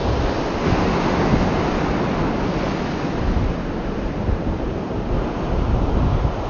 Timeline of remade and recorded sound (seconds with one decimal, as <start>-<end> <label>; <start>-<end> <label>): 0.0-3.8 recorded; 3.8-6.5 remade